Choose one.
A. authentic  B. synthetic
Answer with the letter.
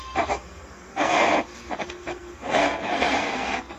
B